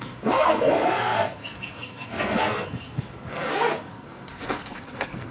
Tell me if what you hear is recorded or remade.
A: remade